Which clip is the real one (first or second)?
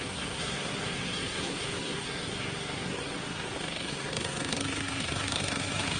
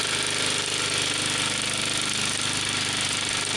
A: second